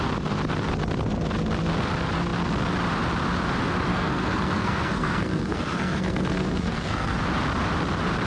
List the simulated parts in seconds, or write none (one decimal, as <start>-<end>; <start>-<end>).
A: 3.9-7.2